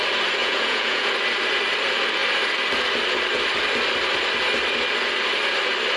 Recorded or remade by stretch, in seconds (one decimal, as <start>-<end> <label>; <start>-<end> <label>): 0.0-0.4 recorded; 0.4-1.1 remade; 1.1-6.0 recorded